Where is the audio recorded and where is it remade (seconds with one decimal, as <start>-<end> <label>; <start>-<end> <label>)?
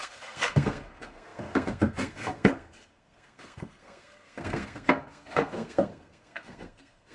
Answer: 0.0-7.1 remade